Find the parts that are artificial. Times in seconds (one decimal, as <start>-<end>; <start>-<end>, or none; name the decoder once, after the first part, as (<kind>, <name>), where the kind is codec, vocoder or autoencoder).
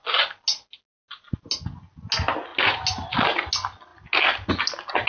none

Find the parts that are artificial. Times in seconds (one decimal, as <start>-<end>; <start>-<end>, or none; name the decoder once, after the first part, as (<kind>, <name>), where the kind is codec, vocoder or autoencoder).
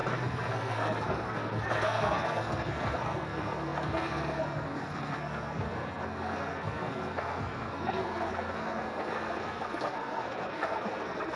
0.0-11.4 (codec, SNAC)